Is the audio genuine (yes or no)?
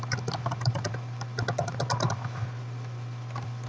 yes